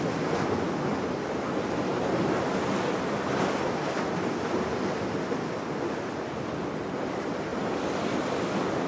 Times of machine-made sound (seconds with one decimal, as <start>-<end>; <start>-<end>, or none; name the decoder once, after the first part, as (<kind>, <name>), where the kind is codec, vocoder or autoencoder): none